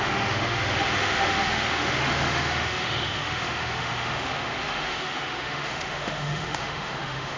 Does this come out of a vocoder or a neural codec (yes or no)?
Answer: yes